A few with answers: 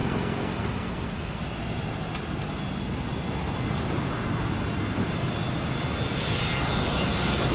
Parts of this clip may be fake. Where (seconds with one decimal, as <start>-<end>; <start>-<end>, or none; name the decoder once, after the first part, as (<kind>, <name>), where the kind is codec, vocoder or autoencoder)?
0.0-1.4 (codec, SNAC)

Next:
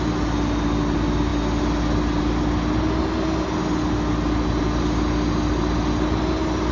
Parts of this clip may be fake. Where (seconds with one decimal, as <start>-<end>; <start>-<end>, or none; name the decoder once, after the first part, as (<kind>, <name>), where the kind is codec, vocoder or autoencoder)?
none

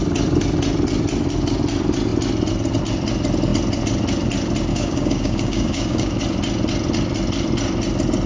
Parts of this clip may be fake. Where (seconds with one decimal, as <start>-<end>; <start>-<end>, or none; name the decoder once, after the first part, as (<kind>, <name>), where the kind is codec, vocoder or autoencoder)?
4.7-6.2 (codec, DAC)

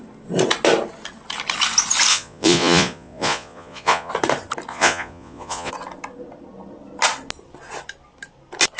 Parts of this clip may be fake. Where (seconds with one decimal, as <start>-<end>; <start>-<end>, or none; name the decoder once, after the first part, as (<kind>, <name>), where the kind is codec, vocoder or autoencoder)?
2.1-4.1 (vocoder, Vocos); 4.7-5.7